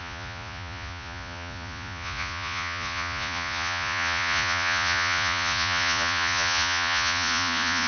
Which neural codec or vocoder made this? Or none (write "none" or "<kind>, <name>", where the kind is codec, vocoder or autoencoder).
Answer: vocoder, Vocos